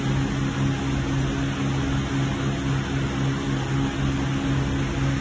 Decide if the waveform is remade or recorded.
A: recorded